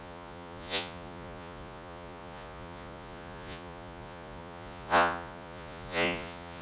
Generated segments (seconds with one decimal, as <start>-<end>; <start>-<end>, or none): 0.0-6.6